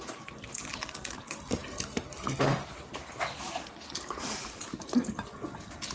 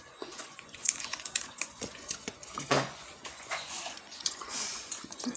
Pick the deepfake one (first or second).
second